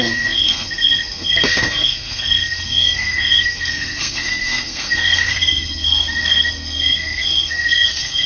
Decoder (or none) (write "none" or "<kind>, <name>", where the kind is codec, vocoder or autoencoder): codec, SNAC